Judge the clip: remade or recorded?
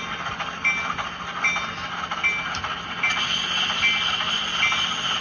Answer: recorded